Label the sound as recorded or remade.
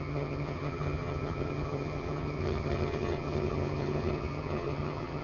remade